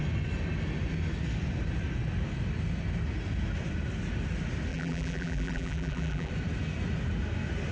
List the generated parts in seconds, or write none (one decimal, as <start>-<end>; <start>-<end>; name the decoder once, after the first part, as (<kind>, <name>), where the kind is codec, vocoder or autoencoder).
4.7-6.3 (vocoder, BigVGAN v2)